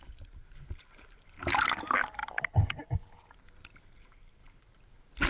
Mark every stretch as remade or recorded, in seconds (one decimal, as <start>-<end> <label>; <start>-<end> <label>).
0.0-5.3 recorded